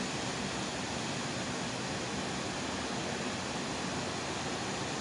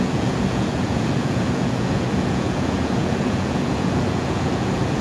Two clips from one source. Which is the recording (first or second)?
first